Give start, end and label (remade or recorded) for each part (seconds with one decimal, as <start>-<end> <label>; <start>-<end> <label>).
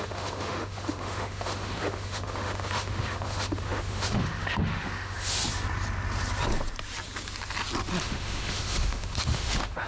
0.0-5.4 remade; 5.4-8.0 recorded; 8.0-9.9 remade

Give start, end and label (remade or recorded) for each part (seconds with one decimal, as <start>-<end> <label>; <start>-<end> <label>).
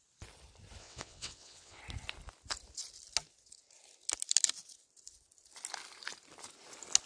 0.0-0.8 recorded; 0.8-1.8 remade; 1.8-7.1 recorded